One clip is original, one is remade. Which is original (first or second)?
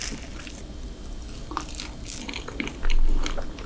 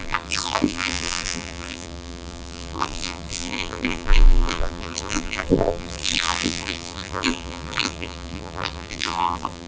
first